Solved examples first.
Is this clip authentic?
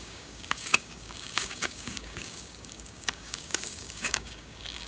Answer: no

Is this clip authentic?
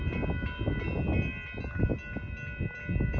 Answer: yes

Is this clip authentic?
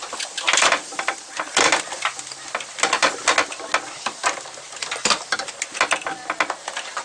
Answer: yes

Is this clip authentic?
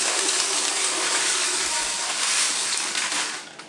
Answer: no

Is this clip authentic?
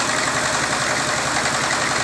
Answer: yes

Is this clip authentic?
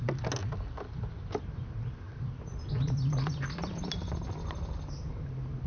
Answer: yes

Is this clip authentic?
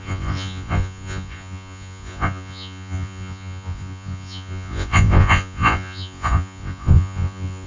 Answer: no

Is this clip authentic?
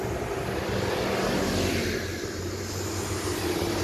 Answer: yes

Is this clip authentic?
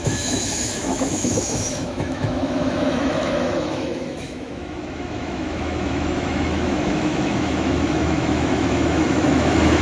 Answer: no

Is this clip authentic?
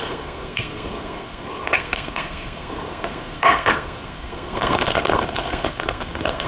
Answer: no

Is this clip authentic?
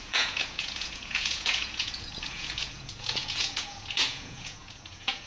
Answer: no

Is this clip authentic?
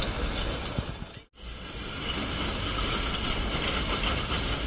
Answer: yes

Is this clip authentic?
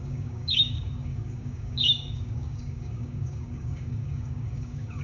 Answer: no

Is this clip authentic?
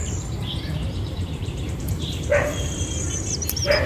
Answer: no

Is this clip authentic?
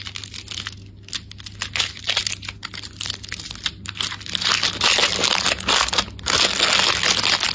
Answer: yes